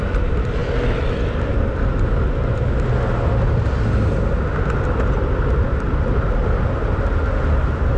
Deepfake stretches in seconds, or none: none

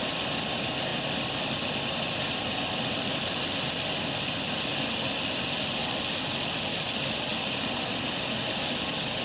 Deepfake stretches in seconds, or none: 0.0-4.7; 5.3-7.3; 7.9-9.2

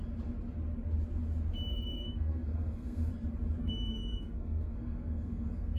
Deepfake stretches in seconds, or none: 1.7-3.1; 3.6-5.8

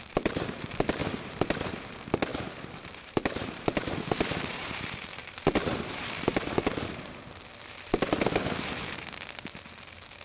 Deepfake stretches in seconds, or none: 1.0-1.9; 2.3-7.0

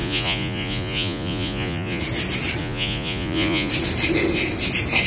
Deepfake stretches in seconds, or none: 0.0-2.0; 2.6-3.7

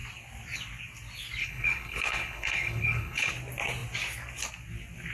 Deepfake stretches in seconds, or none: 1.4-3.3

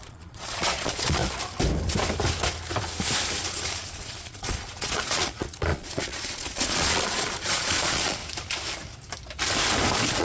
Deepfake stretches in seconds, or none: 0.0-1.2; 3.5-8.2